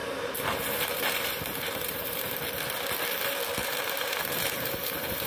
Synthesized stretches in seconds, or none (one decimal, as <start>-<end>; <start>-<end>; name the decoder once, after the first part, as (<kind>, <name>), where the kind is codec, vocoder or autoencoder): 0.0-2.4 (vocoder, BigVGAN v2); 3.6-5.3